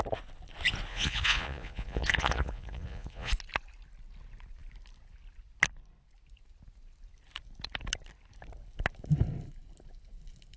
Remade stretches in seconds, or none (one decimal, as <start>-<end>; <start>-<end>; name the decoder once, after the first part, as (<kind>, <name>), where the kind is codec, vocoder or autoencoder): 0.9-3.3 (vocoder, Vocos)